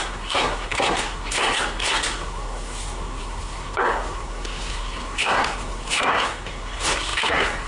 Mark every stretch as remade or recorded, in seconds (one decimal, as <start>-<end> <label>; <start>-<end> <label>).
0.0-7.7 remade